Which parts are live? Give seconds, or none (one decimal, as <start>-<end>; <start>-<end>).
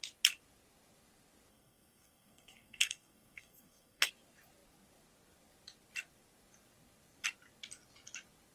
0.0-1.5; 4.1-8.5